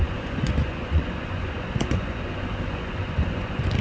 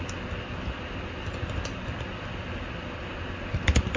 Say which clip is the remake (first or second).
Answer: first